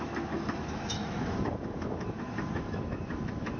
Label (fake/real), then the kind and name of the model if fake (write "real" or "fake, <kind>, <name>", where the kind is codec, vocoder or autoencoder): fake, autoencoder, DAC-VAE